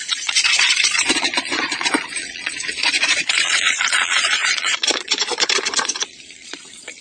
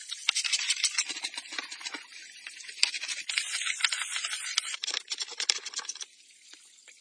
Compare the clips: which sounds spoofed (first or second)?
first